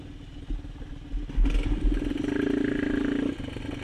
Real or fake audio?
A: real